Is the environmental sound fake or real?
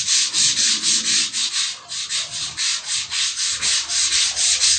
real